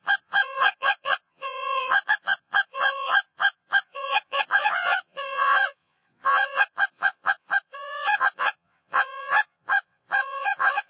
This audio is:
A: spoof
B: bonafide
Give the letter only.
A